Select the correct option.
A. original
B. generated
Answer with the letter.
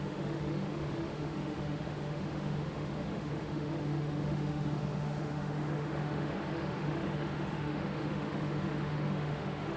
B